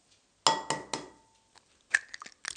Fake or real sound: real